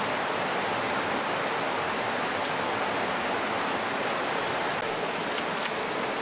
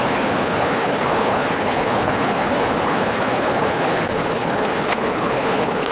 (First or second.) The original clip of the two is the first